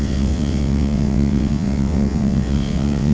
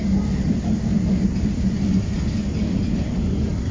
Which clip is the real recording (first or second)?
second